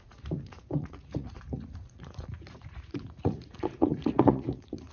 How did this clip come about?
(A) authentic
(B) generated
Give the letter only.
B